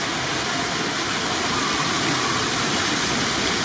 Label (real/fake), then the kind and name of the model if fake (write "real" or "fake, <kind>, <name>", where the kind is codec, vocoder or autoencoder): real